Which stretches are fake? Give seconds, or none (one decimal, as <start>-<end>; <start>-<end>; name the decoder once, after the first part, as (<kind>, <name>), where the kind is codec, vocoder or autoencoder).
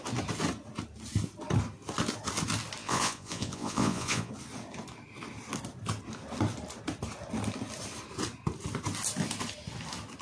2.8-4.3 (vocoder, Vocos)